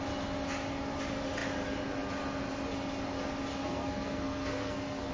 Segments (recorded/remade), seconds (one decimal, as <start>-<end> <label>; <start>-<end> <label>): 0.0-3.5 recorded; 3.5-5.1 remade